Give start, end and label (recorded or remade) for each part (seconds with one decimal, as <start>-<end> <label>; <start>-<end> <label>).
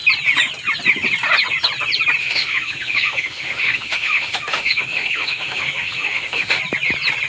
0.0-2.2 recorded; 2.2-6.6 remade; 6.6-7.3 recorded